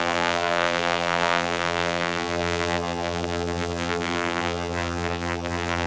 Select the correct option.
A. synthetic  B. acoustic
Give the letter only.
A